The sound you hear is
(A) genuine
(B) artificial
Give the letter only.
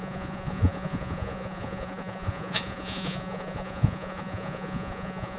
B